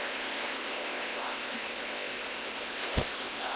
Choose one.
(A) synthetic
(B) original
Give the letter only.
A